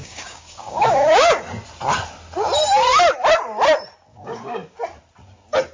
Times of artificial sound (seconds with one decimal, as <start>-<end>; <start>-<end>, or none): 0.0-1.4; 4.1-4.8